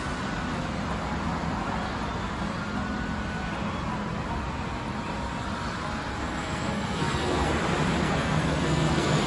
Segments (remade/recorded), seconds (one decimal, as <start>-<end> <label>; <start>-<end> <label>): 0.0-6.2 recorded; 6.2-7.5 remade; 7.5-8.0 recorded; 8.0-9.3 remade